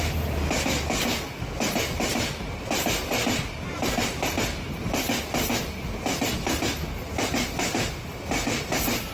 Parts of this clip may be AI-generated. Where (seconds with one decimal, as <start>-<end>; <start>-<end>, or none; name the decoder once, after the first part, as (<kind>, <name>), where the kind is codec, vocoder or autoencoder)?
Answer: 3.1-4.3 (vocoder, BigVGAN v2)